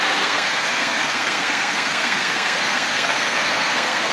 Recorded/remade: remade